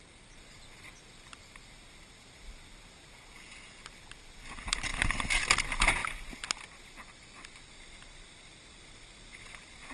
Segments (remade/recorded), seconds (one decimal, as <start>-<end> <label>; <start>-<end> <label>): 0.0-9.9 recorded